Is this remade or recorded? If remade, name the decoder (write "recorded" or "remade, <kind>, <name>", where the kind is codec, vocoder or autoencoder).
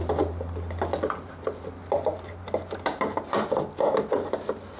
recorded